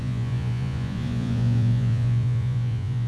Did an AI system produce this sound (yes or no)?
yes